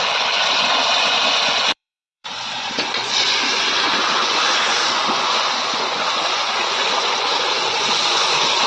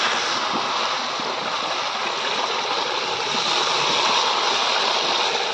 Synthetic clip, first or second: first